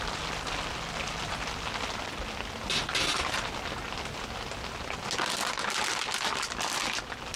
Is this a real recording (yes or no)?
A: yes